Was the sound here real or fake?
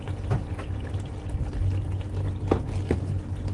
real